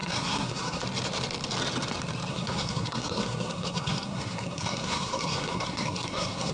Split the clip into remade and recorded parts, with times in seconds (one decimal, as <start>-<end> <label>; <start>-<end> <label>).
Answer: 0.0-0.8 remade; 0.8-2.3 recorded; 2.3-6.5 remade